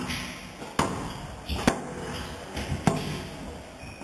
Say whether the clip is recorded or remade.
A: recorded